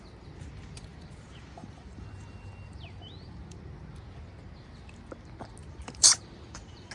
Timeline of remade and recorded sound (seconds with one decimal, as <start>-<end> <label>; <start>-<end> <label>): 0.0-0.9 recorded; 0.9-3.6 remade; 3.6-5.6 recorded; 5.6-6.9 remade